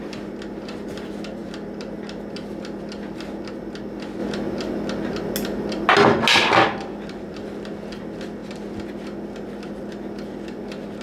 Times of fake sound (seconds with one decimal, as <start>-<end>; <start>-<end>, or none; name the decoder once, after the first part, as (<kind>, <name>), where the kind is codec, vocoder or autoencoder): none

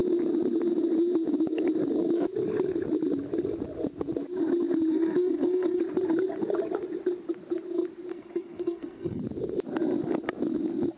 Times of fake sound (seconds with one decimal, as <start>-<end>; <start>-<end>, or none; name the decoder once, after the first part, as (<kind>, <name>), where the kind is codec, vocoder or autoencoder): 4.9-5.8 (codec, SNAC); 8.1-9.2

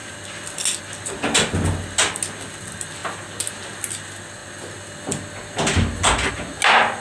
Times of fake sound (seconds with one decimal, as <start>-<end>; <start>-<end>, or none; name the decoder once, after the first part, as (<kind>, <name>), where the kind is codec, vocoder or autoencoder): none

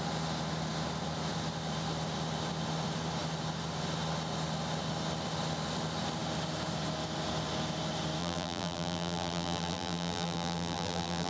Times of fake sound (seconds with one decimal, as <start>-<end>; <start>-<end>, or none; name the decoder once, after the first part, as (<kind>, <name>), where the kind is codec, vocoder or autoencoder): 8.2-11.3 (vocoder, BigVGAN v2)

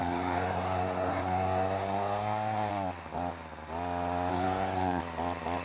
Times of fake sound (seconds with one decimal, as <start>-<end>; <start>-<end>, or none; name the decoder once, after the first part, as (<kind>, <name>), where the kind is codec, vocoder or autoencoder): 0.0-2.7 (codec, SNAC); 4.3-5.0

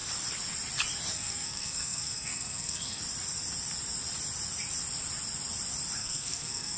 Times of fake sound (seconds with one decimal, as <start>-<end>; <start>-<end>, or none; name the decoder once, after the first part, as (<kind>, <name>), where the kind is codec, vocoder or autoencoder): 1.1-3.0 (codec, SNAC); 6.0-6.8

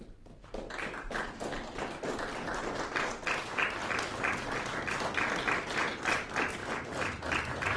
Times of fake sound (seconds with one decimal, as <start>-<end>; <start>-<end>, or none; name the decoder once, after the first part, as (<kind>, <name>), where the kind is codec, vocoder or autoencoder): none

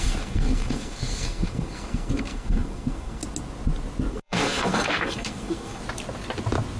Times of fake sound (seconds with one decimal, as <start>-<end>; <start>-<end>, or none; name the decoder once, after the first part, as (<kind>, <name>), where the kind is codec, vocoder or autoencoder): 0.0-3.2 (codec, SNAC); 4.1-5.8